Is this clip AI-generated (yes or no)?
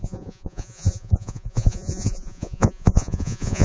yes